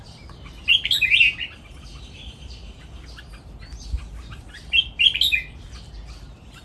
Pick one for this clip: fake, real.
real